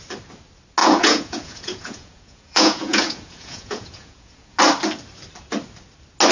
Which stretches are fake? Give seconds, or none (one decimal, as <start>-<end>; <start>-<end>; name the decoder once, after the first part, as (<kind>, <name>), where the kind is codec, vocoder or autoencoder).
0.8-4.6 (vocoder, Vocos)